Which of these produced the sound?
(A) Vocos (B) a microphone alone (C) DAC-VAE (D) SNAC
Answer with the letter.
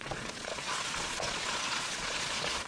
A